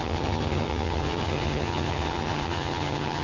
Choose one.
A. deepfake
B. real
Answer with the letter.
A